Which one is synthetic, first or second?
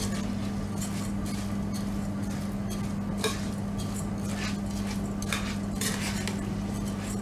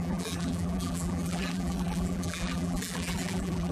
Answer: second